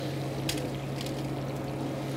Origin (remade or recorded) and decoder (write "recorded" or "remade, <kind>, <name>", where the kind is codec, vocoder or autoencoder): recorded